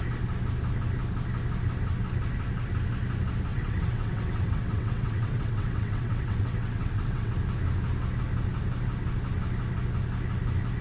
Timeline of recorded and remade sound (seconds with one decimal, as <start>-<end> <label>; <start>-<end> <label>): 0.0-3.5 recorded; 3.5-7.3 remade; 7.3-10.8 recorded